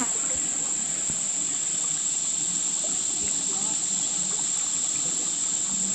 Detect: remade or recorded recorded